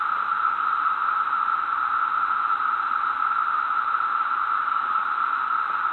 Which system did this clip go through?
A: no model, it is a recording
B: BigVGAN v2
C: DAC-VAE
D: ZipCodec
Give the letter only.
A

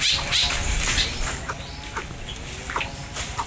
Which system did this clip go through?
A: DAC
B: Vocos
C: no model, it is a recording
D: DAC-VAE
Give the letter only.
C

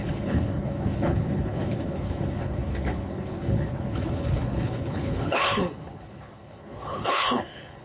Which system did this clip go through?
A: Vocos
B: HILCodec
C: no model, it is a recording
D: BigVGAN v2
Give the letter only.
B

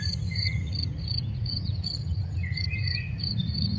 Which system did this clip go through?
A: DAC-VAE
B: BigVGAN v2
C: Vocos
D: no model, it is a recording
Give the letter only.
C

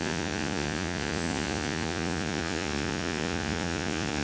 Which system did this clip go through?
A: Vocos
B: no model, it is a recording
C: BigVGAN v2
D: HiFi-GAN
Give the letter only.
A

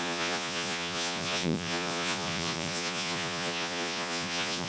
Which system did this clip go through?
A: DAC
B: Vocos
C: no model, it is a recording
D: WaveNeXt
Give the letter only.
B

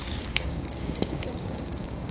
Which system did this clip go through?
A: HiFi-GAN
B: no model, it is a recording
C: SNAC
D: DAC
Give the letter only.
D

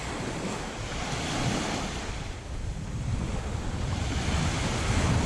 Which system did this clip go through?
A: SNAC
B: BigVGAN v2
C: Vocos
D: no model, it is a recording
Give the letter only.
D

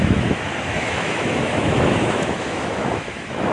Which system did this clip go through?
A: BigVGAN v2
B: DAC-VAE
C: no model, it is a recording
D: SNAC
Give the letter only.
B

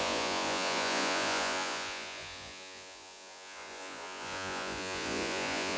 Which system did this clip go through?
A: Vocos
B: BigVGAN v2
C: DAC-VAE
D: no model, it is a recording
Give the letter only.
A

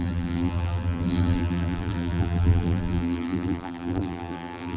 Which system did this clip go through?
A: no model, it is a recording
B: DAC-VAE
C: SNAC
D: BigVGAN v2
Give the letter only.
D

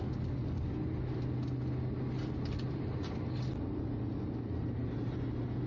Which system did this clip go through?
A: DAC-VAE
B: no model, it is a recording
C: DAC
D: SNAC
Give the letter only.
B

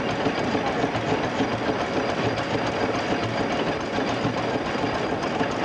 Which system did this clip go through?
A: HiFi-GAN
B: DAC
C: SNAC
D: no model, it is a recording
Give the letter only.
D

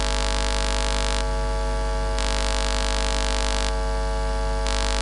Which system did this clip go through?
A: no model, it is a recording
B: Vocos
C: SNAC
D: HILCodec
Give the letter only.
A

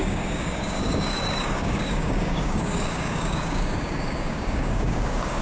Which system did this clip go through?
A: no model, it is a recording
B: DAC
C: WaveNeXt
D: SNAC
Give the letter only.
B